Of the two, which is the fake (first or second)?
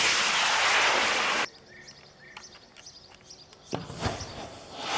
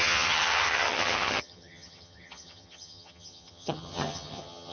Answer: second